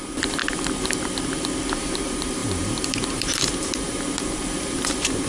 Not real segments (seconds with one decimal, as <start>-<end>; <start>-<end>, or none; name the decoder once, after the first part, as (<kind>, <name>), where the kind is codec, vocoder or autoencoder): 0.0-0.4 (vocoder, BigVGAN v2); 1.7-5.3